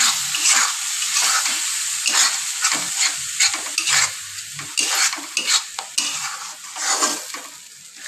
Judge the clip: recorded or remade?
recorded